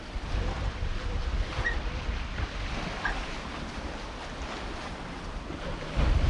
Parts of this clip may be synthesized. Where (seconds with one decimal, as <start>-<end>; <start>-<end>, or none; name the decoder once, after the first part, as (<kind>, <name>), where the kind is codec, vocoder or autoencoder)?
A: none